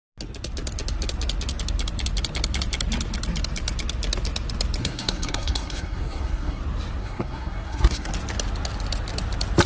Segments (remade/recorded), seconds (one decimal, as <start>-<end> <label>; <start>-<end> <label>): 0.0-4.8 recorded; 4.8-6.6 remade; 6.6-7.0 recorded; 7.0-8.1 remade; 8.1-9.7 recorded